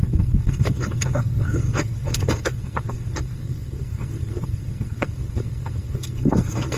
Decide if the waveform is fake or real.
fake